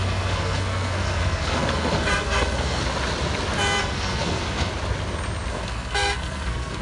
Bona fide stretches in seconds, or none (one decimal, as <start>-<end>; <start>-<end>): 2.8-3.8; 4.7-5.5